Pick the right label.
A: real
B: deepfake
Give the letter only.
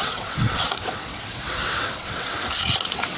B